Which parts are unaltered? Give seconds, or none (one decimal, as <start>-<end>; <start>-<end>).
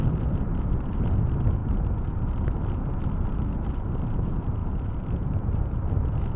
0.0-6.4